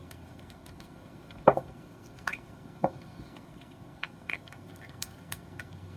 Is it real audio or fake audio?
fake